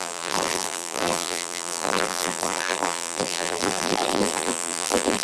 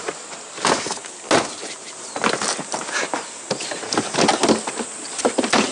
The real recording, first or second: second